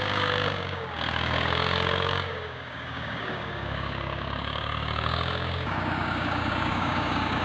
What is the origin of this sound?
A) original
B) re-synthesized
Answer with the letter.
B